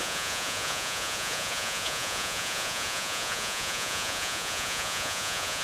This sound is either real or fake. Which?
fake